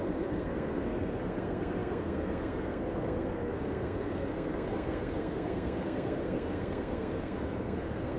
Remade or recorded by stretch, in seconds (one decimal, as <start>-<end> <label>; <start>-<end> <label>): 0.0-8.2 remade